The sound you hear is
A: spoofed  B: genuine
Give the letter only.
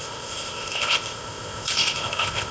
A